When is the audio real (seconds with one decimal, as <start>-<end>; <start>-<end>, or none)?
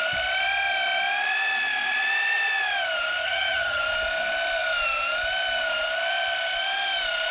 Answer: 0.0-3.2; 3.8-7.3